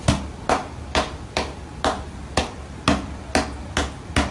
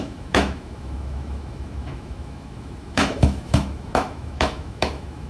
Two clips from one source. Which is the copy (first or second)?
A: second